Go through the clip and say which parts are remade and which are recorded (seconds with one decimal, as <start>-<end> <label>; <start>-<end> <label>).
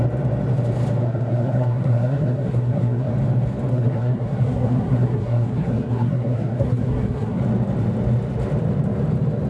0.0-1.0 recorded; 1.0-3.1 remade; 3.1-3.7 recorded; 3.7-7.4 remade; 7.4-9.5 recorded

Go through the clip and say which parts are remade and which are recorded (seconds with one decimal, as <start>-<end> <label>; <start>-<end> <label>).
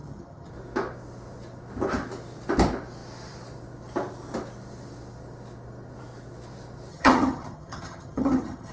0.0-0.5 remade; 0.5-6.9 recorded; 6.9-8.7 remade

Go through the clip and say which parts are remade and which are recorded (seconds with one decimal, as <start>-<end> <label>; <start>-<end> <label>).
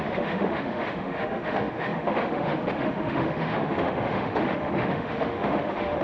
0.0-6.0 remade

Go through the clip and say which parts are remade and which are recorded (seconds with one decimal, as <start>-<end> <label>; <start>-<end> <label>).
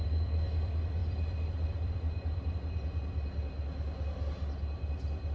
0.0-1.0 recorded; 1.0-2.5 remade; 2.5-5.3 recorded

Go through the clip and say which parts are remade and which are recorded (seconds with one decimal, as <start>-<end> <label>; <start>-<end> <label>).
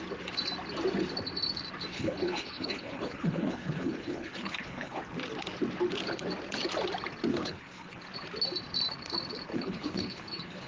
0.0-1.9 recorded; 1.9-5.0 remade; 5.0-7.3 recorded; 7.3-8.0 remade; 8.0-9.5 recorded; 9.5-10.7 remade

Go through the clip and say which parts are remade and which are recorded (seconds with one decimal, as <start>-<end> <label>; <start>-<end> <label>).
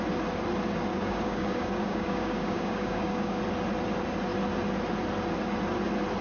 0.0-0.9 recorded; 0.9-3.4 remade; 3.4-6.2 recorded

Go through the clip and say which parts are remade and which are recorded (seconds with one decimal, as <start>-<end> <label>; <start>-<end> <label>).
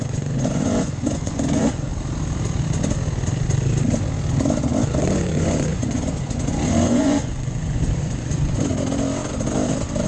0.0-1.9 remade; 1.9-5.0 recorded; 5.0-8.7 remade; 8.7-10.1 recorded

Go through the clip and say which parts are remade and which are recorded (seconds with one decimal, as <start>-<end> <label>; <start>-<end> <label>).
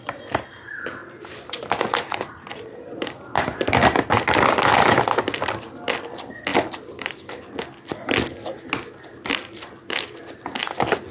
0.0-1.0 recorded; 1.0-3.2 remade; 3.2-6.5 recorded; 6.5-7.3 remade; 7.3-11.1 recorded